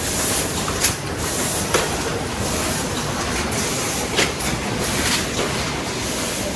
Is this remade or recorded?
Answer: recorded